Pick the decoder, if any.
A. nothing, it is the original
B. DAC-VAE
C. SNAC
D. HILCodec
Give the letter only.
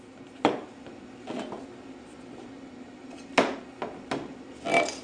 A